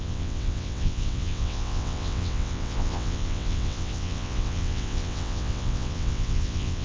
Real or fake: fake